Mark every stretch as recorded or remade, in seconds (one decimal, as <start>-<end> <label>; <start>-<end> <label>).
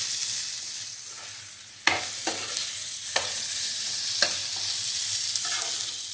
0.0-1.3 recorded; 1.3-2.0 remade; 2.0-2.6 recorded; 2.6-4.0 remade; 4.0-6.1 recorded